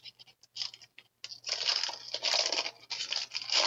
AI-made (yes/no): no